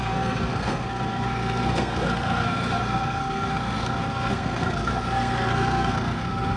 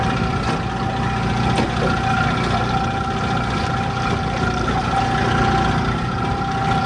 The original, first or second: second